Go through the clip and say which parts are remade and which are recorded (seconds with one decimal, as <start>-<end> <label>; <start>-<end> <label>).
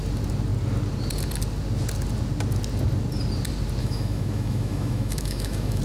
0.0-3.8 recorded; 3.8-5.8 remade